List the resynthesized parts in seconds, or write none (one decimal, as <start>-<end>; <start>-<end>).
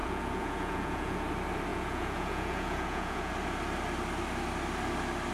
0.0-1.2; 1.7-3.3